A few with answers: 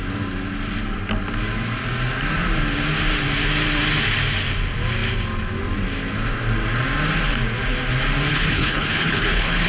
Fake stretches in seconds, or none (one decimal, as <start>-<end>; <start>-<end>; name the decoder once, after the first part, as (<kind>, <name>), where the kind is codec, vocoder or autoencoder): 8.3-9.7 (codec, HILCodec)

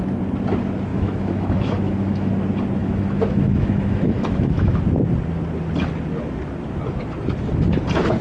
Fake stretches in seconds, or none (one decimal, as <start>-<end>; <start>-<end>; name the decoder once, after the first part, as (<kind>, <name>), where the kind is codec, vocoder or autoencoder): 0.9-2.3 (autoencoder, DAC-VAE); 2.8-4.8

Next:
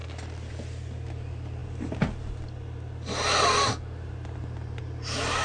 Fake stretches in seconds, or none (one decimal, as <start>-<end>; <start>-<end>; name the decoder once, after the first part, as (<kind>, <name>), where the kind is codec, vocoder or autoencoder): none

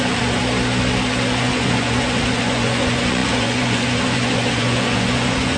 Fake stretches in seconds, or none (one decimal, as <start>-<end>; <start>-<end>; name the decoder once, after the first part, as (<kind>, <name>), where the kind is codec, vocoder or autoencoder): 0.0-0.4 (vocoder, Vocos); 1.4-5.6

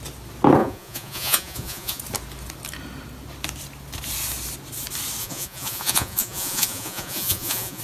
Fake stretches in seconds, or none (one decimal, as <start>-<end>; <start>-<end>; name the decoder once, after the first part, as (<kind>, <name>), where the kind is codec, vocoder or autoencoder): 0.6-2.0 (vocoder, Vocos); 5.2-7.8

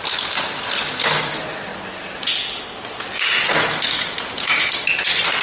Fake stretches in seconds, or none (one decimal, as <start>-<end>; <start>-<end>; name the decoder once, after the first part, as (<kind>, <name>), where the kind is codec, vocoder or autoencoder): none

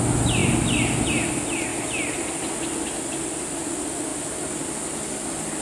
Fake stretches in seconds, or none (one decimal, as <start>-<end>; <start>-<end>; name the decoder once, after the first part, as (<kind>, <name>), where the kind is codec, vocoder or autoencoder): none